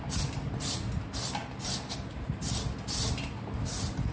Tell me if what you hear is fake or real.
real